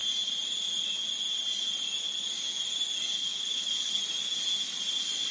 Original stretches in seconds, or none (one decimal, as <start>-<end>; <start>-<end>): 0.0-3.2; 4.0-5.3